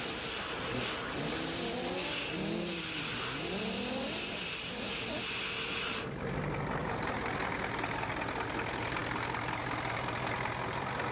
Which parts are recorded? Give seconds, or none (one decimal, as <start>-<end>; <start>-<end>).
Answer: 0.0-6.8; 8.1-11.1